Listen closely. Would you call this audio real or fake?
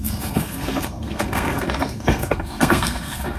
fake